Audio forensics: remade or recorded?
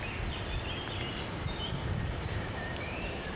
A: remade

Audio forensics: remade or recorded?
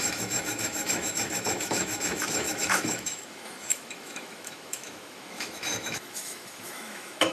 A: remade